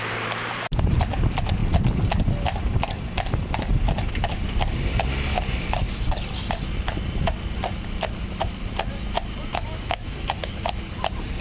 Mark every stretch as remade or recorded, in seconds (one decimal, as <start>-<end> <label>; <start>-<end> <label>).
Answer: 0.0-9.5 recorded; 9.5-10.9 remade; 10.9-11.4 recorded